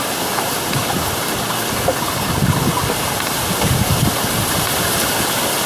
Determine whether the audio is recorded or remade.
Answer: recorded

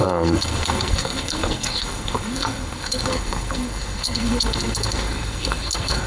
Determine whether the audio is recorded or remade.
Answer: remade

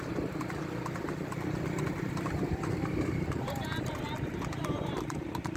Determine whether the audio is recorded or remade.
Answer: recorded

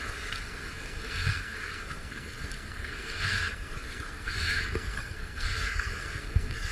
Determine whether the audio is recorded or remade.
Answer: remade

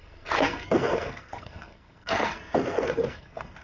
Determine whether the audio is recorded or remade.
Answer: remade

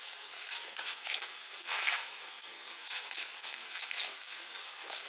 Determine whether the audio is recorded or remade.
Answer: remade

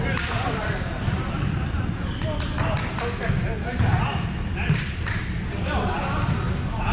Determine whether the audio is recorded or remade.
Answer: recorded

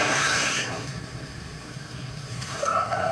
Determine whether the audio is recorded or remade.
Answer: remade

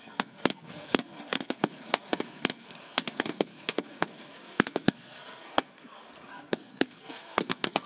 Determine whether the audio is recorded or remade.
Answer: remade